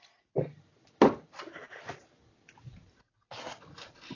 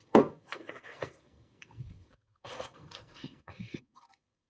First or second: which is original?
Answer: first